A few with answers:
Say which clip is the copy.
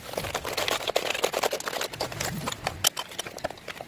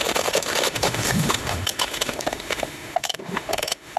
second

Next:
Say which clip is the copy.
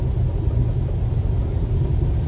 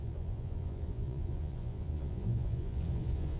second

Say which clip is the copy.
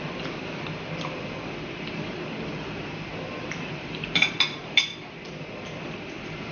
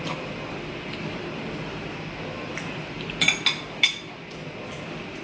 first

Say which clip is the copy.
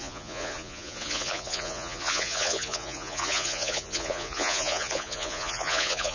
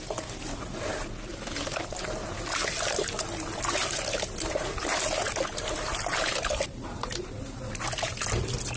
first